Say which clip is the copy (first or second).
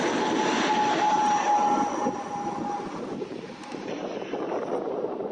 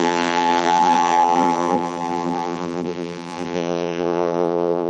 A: second